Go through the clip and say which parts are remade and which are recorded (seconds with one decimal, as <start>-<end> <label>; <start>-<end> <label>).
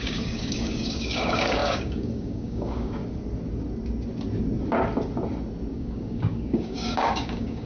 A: 0.0-3.0 remade; 3.0-5.7 recorded; 5.7-7.7 remade